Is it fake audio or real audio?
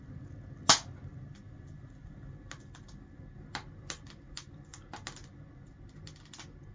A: real